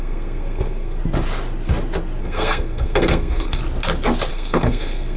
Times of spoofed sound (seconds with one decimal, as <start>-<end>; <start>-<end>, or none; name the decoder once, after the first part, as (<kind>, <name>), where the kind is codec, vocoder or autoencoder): 0.0-1.0 (codec, SNAC); 2.2-3.6; 4.3-5.2